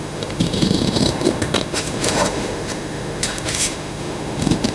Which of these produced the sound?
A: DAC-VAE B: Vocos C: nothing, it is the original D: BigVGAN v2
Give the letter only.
A